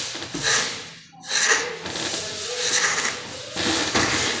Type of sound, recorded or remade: recorded